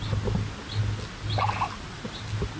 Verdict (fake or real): real